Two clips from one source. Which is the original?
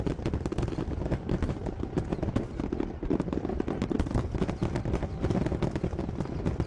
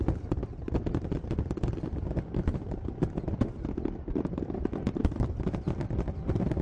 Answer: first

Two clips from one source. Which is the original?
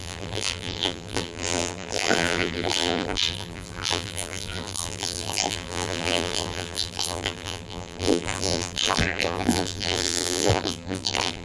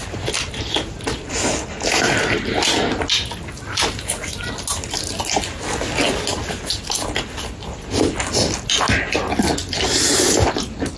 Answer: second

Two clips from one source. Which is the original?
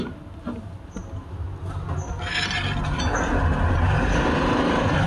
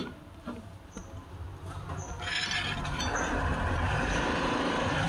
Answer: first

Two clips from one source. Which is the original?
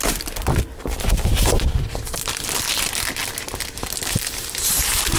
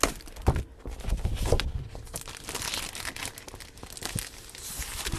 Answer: second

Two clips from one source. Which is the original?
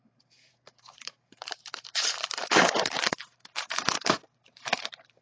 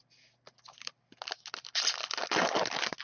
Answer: second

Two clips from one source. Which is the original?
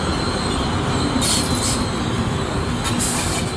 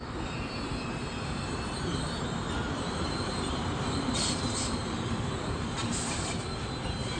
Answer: first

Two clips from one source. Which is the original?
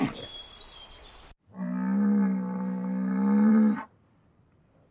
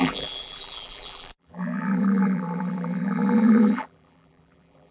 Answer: first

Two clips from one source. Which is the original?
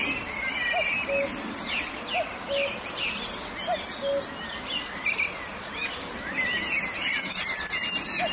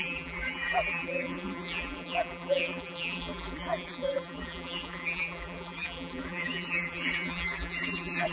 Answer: first